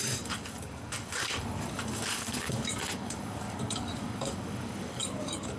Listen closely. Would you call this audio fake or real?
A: fake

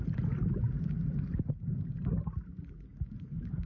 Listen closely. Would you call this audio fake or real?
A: real